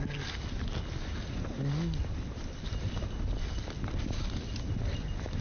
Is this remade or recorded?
recorded